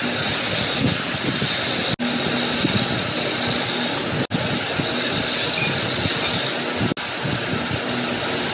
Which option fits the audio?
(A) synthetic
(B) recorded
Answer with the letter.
B